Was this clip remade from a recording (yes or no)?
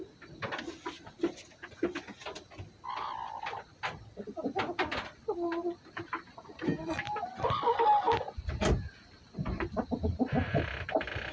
no